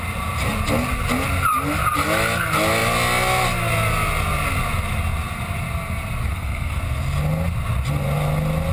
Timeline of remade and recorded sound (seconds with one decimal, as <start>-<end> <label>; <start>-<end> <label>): 0.0-6.2 recorded; 6.2-6.8 remade; 6.8-8.7 recorded